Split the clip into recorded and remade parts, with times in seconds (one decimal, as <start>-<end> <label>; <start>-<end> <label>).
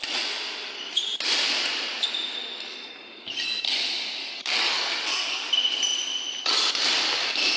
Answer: 0.0-4.2 recorded; 4.2-5.5 remade; 5.5-7.6 recorded